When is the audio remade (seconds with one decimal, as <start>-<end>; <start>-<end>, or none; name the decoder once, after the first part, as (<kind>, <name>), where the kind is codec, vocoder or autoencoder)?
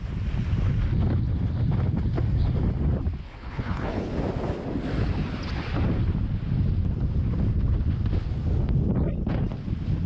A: 3.2-4.1 (codec, HILCodec)